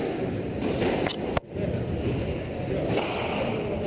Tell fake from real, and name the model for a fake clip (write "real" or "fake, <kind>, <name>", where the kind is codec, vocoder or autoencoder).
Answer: real